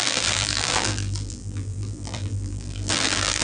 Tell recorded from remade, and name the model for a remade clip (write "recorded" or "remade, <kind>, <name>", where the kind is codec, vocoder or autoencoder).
remade, vocoder, BigVGAN v2